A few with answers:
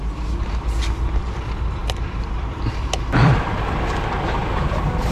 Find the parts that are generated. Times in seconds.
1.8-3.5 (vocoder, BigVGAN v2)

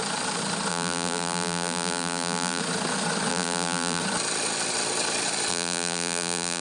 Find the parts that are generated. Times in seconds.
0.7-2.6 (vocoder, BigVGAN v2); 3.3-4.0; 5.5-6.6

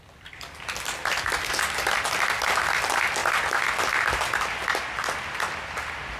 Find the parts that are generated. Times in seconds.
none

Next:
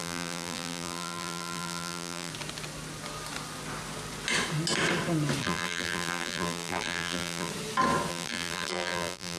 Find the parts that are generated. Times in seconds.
0.0-2.3 (vocoder, BigVGAN v2); 5.4-7.5; 8.1-9.4